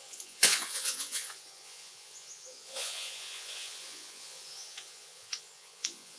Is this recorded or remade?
remade